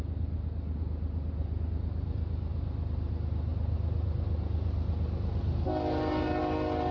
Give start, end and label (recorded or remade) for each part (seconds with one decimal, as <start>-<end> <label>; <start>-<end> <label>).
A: 0.0-6.9 recorded